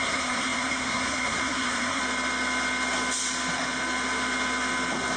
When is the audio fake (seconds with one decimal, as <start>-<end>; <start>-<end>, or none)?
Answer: 0.0-2.0